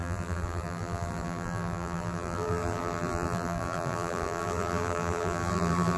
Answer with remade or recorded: remade